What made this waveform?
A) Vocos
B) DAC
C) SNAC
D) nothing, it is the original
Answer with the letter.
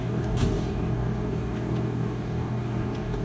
B